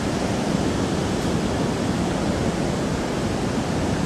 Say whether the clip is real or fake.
real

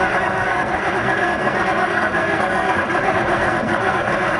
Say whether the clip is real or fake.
fake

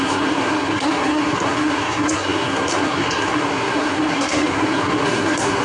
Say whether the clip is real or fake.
fake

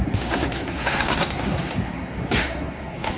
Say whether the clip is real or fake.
fake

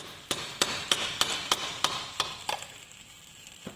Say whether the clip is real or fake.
real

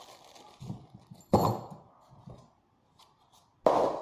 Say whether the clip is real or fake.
real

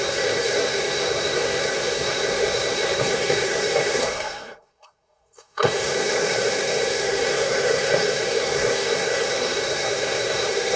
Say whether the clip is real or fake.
fake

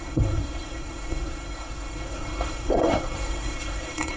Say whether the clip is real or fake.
fake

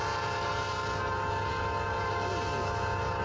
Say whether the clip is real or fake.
real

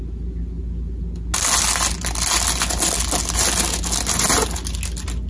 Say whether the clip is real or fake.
real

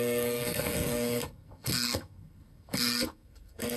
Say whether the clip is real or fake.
fake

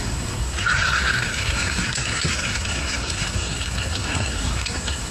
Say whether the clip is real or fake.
fake